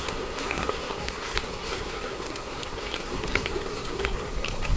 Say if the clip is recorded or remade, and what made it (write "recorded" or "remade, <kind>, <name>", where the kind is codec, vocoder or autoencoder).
remade, codec, SNAC